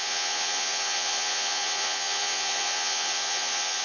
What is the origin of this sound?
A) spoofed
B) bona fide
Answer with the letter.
A